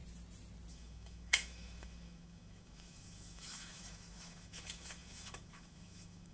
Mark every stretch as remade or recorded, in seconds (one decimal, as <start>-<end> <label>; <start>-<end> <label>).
0.0-0.7 recorded; 0.7-6.3 remade